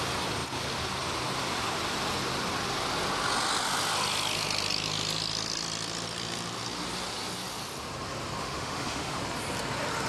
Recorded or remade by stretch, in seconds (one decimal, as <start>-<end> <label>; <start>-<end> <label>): 0.0-8.4 recorded; 8.4-9.2 remade; 9.2-10.1 recorded